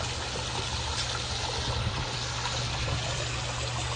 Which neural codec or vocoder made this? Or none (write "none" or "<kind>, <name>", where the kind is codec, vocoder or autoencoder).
none